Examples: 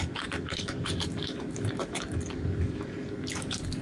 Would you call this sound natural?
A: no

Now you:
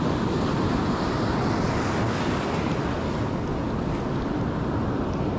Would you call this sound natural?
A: yes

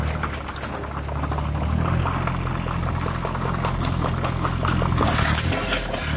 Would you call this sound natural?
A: yes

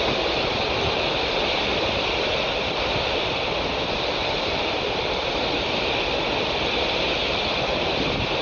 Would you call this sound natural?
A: yes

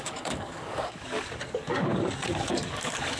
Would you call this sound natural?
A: no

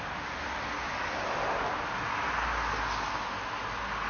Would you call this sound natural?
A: yes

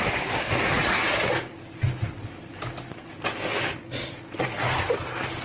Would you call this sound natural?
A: yes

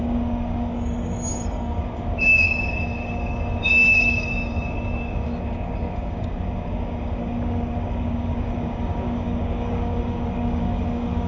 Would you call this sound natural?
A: no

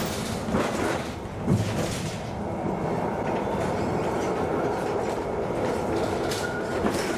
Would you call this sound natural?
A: yes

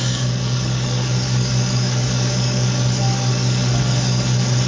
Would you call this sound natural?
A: no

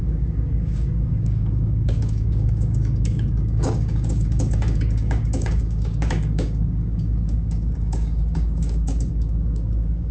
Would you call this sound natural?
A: no